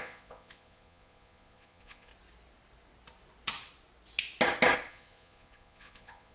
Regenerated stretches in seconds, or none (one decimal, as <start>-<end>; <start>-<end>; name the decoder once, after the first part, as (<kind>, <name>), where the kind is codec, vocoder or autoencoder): 0.0-2.1 (vocoder, Vocos); 4.9-6.3